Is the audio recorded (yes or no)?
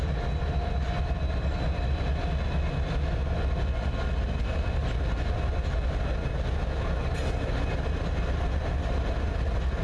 yes